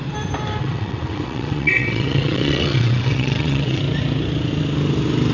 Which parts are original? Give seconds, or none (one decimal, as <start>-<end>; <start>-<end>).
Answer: 0.0-0.6; 3.8-5.3